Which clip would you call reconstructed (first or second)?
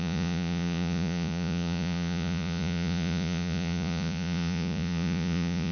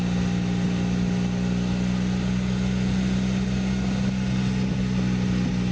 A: first